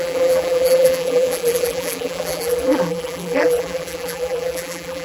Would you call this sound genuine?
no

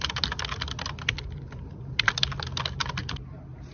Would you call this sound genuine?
yes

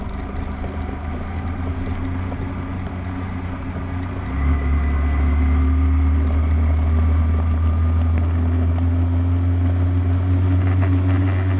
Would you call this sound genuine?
yes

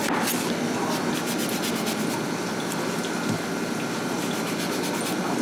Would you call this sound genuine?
yes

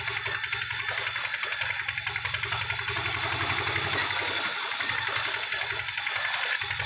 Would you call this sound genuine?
yes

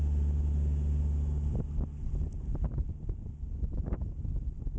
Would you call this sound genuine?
yes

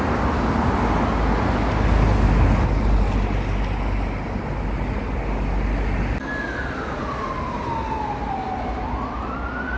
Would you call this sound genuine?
yes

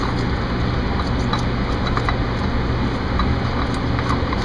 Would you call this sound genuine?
yes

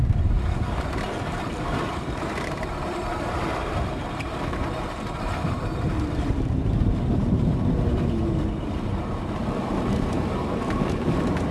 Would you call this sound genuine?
no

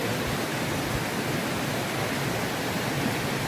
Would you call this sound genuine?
yes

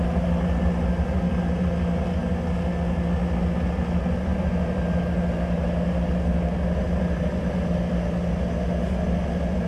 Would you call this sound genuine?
yes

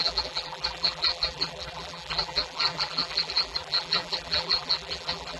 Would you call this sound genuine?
no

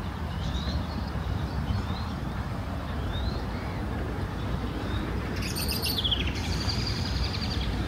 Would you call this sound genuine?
no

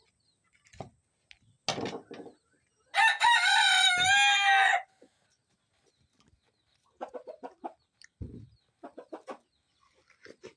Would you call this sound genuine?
yes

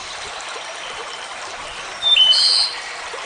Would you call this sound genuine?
no